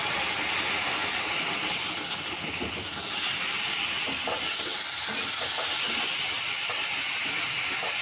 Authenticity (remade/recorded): recorded